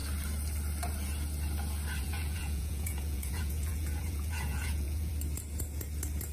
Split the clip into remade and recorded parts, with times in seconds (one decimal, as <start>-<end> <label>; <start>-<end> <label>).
0.0-2.0 recorded; 2.0-5.1 remade; 5.1-6.3 recorded